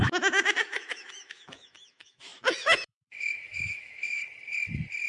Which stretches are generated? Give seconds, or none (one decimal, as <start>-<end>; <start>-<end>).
0.0-4.2